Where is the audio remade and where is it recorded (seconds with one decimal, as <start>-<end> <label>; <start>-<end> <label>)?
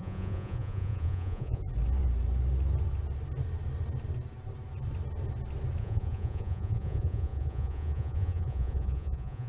0.0-1.6 remade; 1.6-5.8 recorded; 5.8-9.5 remade